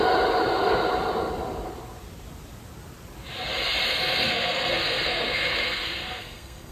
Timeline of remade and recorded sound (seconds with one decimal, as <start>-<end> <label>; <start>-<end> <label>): 0.0-3.9 recorded; 3.9-6.7 remade